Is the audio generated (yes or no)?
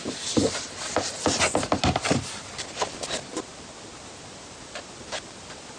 no